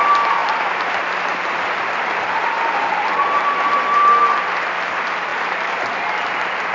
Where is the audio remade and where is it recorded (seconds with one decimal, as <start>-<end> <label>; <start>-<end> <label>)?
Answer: 0.0-6.7 recorded

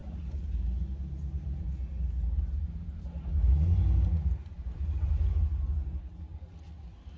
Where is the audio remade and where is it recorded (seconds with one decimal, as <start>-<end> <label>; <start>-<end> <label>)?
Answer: 0.0-7.2 recorded

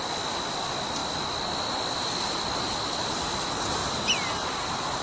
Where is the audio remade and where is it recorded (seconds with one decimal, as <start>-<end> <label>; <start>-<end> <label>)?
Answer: 0.0-5.0 recorded

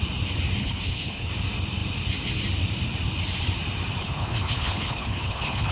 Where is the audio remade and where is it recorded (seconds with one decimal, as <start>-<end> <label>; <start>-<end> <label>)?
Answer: 0.0-0.6 recorded; 0.6-1.3 remade; 1.3-4.0 recorded; 4.0-5.7 remade

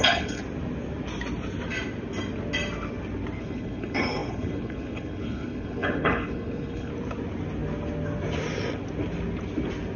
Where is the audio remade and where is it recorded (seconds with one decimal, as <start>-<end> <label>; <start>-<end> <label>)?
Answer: 0.0-0.4 remade; 0.4-3.4 recorded; 3.4-6.9 remade; 6.9-10.0 recorded

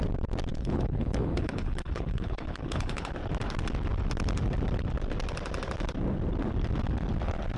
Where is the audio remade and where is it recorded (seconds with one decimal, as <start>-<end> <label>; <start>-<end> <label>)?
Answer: 0.0-0.5 recorded; 0.5-3.1 remade; 3.1-7.6 recorded